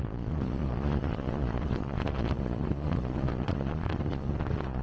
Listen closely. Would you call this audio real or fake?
fake